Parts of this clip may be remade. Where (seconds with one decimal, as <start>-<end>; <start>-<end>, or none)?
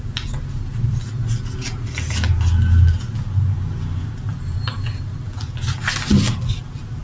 none